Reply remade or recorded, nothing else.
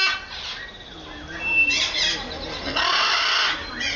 recorded